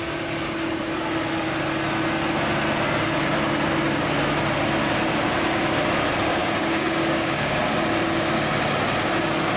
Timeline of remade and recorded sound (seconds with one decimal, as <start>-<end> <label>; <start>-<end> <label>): 0.0-6.4 recorded; 6.4-7.6 remade; 7.6-9.6 recorded